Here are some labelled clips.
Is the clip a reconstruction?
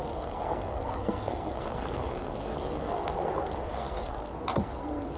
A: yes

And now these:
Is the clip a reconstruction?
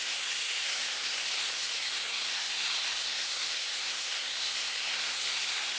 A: yes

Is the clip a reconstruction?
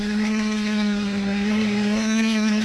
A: yes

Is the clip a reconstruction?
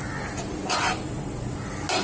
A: no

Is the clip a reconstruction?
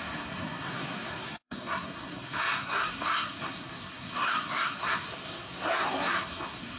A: yes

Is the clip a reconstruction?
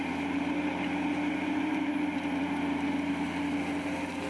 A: no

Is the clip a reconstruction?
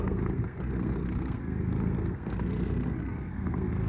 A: yes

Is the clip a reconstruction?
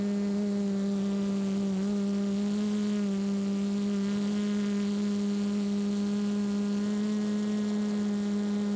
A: no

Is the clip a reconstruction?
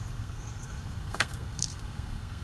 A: yes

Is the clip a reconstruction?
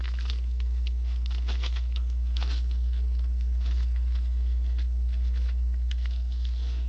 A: yes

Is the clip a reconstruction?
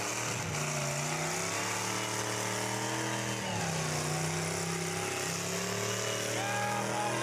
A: no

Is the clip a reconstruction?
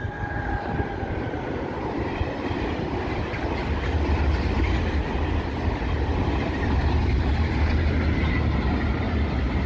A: no